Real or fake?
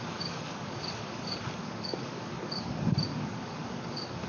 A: fake